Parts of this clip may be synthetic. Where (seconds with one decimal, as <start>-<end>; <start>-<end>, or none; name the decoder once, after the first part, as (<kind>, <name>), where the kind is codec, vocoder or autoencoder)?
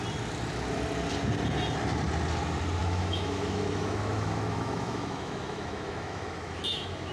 2.8-7.1 (autoencoder, DAC-VAE)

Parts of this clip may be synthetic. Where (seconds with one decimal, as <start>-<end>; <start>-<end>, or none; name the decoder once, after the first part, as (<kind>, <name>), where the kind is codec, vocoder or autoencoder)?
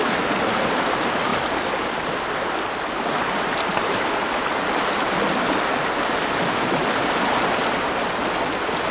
none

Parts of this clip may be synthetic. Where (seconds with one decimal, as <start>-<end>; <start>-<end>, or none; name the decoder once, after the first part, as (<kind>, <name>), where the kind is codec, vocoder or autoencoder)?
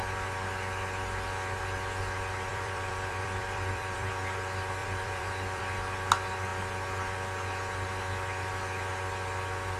2.5-4.1 (vocoder, BigVGAN v2); 4.8-5.6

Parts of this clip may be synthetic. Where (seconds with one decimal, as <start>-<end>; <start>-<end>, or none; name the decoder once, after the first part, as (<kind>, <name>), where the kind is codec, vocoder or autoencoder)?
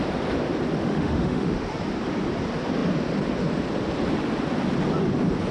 0.8-1.7 (autoencoder, DAC-VAE)